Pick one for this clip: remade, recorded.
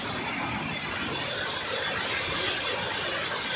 recorded